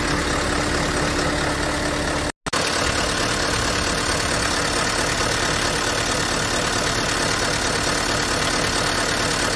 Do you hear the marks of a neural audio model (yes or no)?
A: no